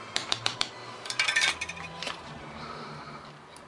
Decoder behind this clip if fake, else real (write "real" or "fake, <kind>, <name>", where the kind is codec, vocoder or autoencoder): fake, vocoder, BigVGAN v2